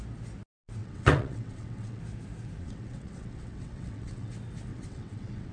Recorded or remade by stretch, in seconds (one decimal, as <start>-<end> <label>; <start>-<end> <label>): 0.0-0.8 recorded; 0.8-2.0 remade; 2.0-2.6 recorded; 2.6-4.3 remade; 4.3-4.7 recorded; 4.7-5.5 remade